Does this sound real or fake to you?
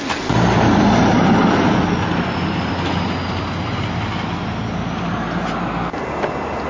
real